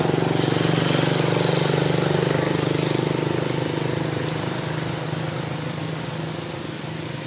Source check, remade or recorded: recorded